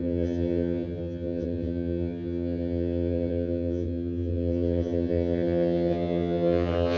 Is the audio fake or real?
fake